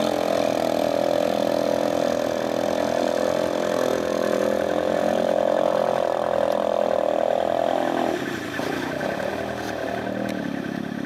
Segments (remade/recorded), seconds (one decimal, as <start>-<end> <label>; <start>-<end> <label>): 0.0-3.9 recorded; 3.9-6.0 remade; 6.0-11.1 recorded